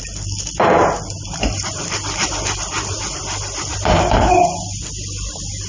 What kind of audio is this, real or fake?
fake